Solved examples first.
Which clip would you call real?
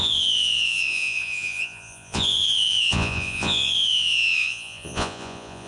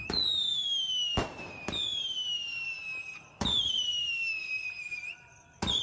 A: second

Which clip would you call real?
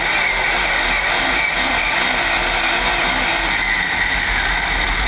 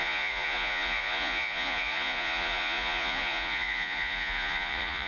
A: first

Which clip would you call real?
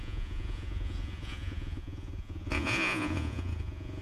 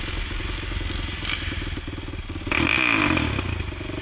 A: second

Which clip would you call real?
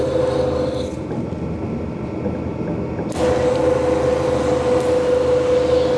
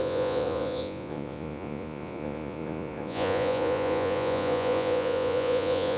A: first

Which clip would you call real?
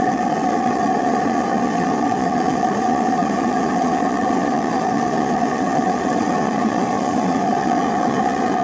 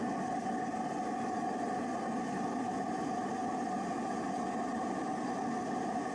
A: second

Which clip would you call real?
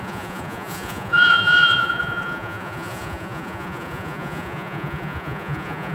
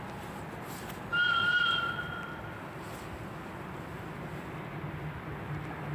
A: second